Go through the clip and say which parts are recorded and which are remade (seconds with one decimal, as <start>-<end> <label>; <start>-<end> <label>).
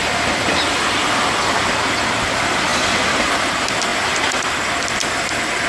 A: 0.0-1.0 recorded; 1.0-1.7 remade; 1.7-2.7 recorded; 2.7-3.3 remade; 3.3-3.9 recorded; 3.9-5.7 remade